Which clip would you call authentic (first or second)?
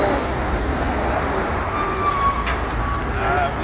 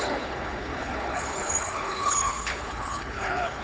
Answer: first